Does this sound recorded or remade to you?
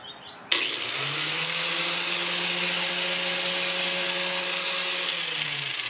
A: recorded